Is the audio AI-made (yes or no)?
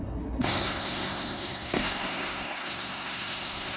yes